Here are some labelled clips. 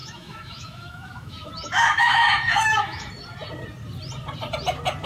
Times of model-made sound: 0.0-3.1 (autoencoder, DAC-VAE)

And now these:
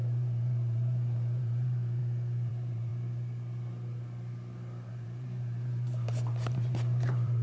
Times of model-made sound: 0.0-2.0 (vocoder, BigVGAN v2); 2.5-2.9; 4.9-7.4

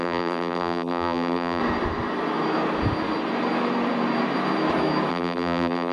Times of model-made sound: 0.0-1.6 (vocoder, BigVGAN v2); 5.1-5.9

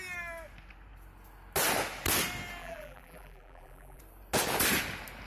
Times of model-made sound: 2.6-4.0 (vocoder, BigVGAN v2)

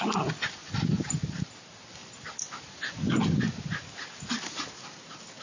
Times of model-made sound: none